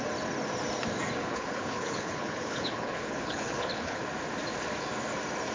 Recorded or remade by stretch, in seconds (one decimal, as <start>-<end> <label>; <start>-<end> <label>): 0.0-1.2 recorded; 1.2-4.0 remade; 4.0-5.5 recorded